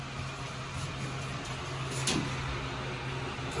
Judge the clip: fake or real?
real